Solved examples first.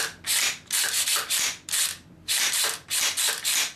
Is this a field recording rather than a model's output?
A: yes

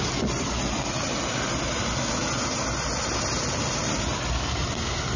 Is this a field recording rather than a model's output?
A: yes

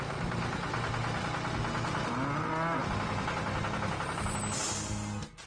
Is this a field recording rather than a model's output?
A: yes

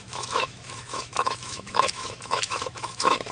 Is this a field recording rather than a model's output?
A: no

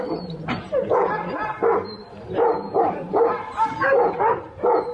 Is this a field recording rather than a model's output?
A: no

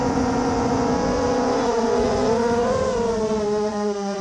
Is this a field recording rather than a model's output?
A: no